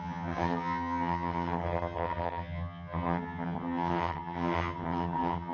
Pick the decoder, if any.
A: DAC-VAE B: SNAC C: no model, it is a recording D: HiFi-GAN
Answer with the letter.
D